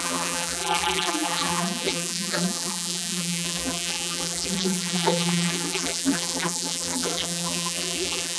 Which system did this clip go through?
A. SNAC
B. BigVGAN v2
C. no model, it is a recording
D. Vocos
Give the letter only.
B